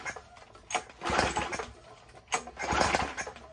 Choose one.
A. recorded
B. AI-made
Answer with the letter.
A